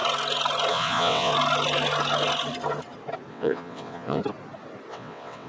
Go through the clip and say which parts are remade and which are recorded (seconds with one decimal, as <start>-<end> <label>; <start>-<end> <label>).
0.0-0.7 recorded; 0.7-1.3 remade; 1.3-3.3 recorded; 3.3-4.2 remade; 4.2-4.9 recorded; 4.9-5.5 remade